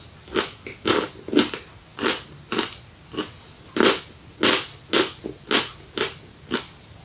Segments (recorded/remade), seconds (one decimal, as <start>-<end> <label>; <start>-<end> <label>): 0.0-7.0 recorded